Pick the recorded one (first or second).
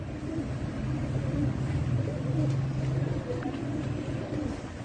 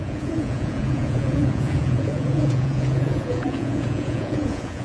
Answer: first